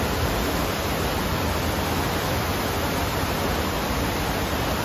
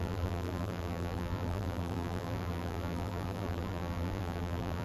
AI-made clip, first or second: second